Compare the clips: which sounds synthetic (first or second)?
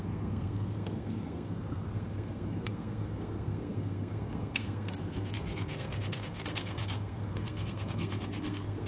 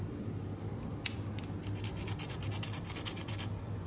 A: first